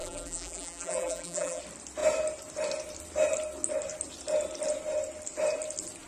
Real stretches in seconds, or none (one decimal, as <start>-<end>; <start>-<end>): 1.6-6.1